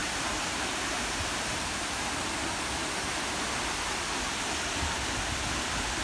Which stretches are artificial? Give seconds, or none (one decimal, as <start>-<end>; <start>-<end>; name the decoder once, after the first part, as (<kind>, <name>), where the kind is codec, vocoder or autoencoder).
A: 0.0-3.6 (vocoder, BigVGAN v2)